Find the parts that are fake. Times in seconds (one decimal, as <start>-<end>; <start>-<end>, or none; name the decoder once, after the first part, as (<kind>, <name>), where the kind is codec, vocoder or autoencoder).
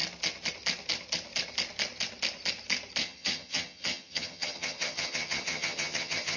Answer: 3.0-6.4 (vocoder, HiFi-GAN)